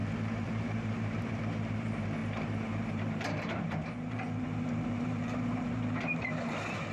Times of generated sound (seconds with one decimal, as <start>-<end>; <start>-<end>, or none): 0.0-6.9